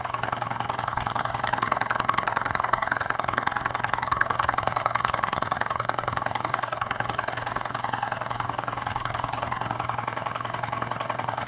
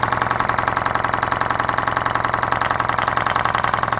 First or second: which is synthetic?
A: first